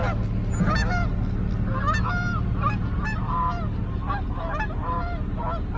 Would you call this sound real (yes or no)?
yes